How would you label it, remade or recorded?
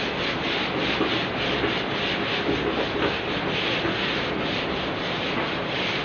recorded